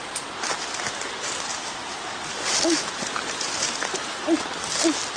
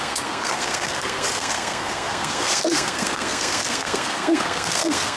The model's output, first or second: second